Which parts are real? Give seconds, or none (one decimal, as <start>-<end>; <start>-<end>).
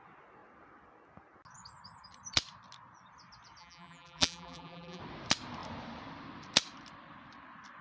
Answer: 0.0-3.6; 5.0-7.8